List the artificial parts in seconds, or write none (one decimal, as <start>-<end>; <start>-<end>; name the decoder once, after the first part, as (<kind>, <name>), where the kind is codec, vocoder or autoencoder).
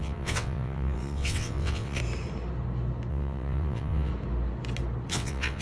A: 0.0-2.0 (vocoder, WaveNeXt); 3.1-4.1; 5.1-5.6